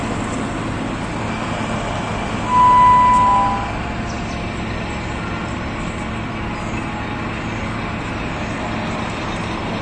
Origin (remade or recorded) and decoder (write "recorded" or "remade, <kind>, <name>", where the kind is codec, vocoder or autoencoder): recorded